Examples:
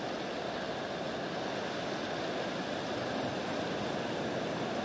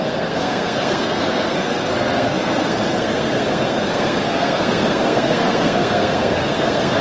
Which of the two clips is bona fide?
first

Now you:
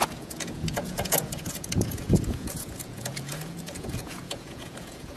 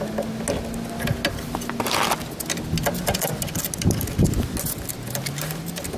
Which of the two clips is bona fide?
second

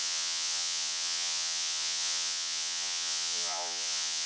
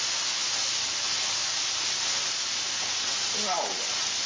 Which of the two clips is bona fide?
second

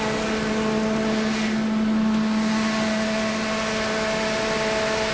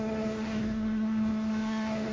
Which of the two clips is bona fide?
first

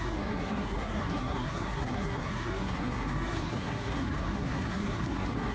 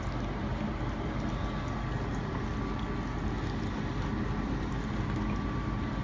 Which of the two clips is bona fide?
second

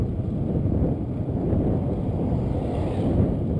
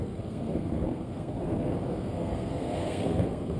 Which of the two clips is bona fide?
first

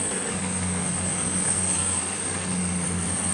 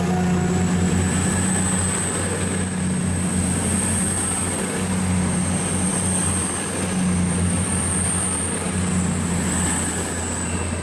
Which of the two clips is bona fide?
second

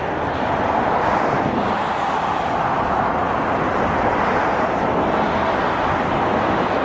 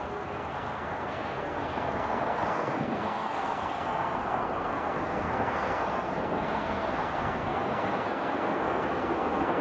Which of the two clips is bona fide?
first